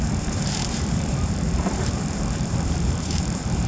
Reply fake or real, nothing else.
fake